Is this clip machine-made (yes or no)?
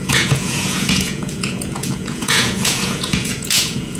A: yes